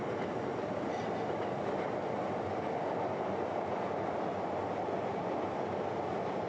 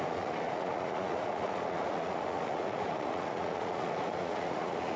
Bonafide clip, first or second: first